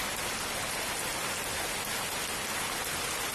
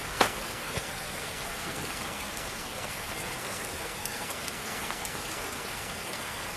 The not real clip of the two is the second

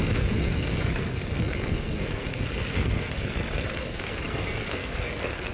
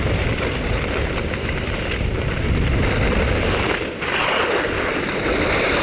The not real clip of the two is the first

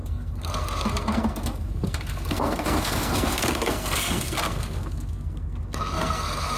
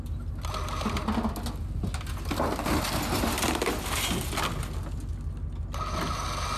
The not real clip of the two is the first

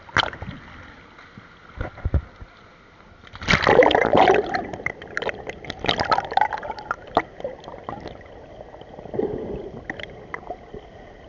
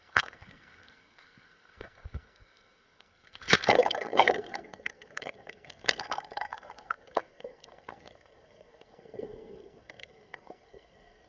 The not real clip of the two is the second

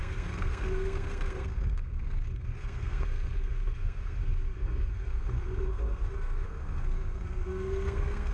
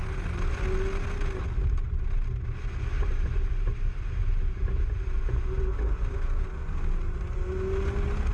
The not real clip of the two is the first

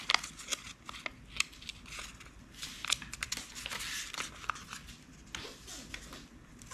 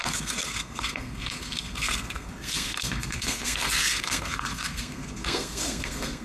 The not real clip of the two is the second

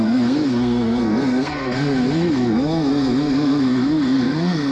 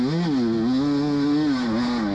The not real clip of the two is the first